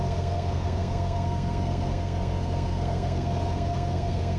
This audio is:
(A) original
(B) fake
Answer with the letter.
B